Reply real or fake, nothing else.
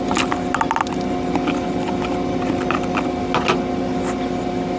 real